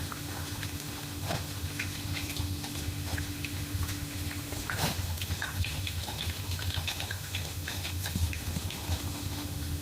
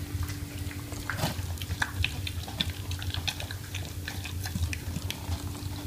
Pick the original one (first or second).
second